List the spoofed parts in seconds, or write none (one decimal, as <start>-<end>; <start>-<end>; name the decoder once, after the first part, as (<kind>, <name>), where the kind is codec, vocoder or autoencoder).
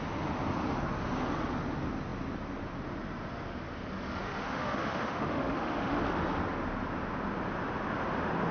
4.2-6.0 (autoencoder, DAC-VAE)